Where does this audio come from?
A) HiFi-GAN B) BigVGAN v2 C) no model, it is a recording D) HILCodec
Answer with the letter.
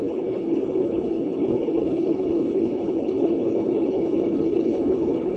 D